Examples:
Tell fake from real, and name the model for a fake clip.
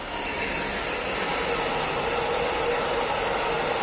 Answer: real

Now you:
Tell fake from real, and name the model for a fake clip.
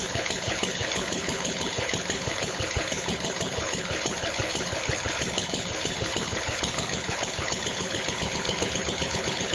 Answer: fake, codec, HILCodec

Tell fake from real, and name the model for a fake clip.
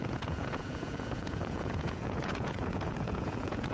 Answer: fake, vocoder, Vocos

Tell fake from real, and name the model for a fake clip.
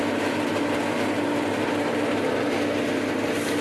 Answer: real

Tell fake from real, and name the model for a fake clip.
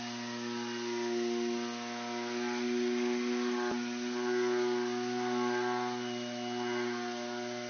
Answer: real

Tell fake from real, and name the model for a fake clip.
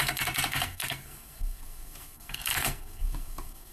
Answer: fake, codec, SNAC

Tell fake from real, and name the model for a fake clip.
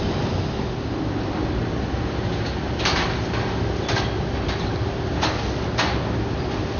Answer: real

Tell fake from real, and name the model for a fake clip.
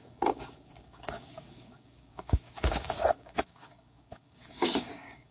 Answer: fake, codec, DAC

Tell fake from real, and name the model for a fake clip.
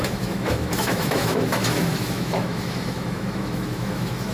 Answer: fake, autoencoder, DAC-VAE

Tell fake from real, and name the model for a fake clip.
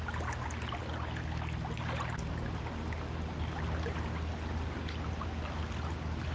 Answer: real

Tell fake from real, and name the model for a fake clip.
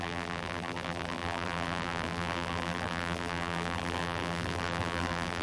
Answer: fake, vocoder, BigVGAN v2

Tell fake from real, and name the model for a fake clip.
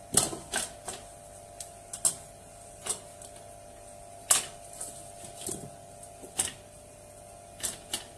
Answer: real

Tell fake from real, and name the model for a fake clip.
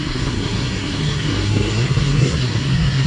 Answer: fake, codec, SNAC